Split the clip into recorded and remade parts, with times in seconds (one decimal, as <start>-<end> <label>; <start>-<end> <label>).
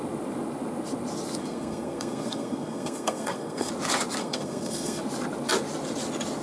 0.0-1.4 recorded; 1.4-3.7 remade; 3.7-4.2 recorded; 4.2-5.0 remade; 5.0-6.4 recorded